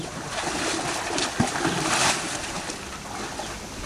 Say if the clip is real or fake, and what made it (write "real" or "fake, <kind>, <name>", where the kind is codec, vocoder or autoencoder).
real